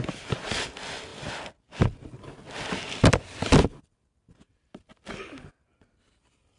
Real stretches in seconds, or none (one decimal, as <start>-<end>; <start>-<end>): 0.0-6.6